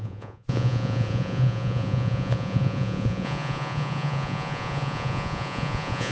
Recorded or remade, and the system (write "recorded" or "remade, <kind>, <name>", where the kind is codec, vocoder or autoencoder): remade, vocoder, Vocos